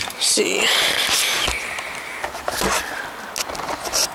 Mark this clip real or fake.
real